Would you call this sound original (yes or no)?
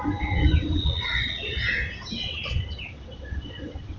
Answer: no